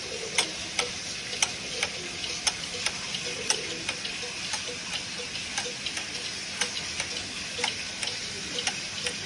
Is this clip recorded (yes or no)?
yes